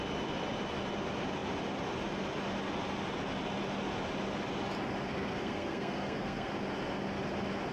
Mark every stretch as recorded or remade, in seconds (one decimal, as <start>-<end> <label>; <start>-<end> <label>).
0.0-5.1 recorded; 5.1-6.5 remade; 6.5-7.7 recorded